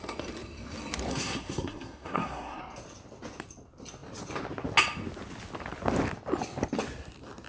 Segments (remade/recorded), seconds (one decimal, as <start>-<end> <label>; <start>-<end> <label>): 0.0-1.1 recorded; 1.1-2.6 remade; 2.6-7.5 recorded